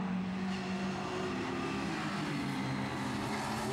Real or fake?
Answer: real